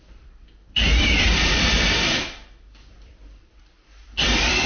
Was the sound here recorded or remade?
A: remade